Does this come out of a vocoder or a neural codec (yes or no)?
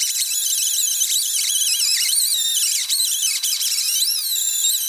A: yes